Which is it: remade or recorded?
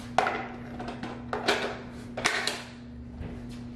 recorded